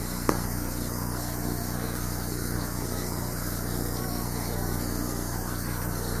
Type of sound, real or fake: fake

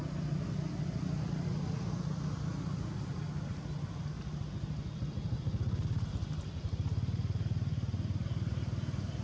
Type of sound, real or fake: real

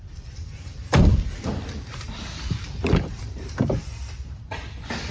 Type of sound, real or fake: fake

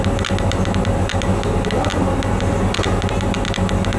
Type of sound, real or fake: real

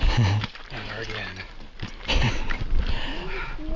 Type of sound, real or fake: real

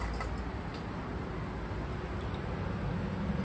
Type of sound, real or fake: real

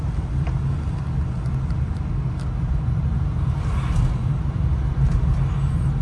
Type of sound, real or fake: real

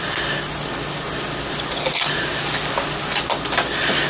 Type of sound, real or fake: real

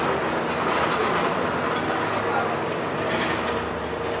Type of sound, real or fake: real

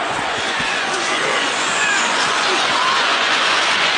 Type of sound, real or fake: fake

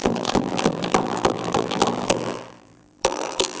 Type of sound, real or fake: fake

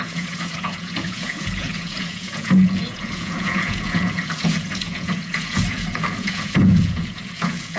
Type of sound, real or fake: fake